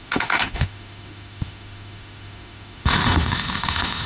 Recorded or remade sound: remade